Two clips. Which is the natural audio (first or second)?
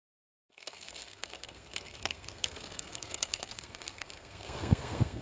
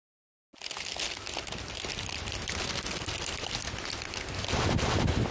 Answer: second